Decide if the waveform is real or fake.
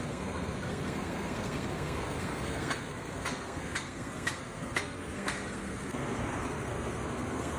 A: fake